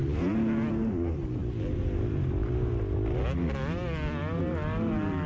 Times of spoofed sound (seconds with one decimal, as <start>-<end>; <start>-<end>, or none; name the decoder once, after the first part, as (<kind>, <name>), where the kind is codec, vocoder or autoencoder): none